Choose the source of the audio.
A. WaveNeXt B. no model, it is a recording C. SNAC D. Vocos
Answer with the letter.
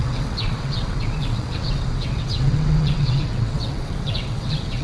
A